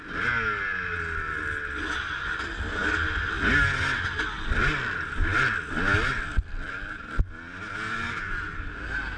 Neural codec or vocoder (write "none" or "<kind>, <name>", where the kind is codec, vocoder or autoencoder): none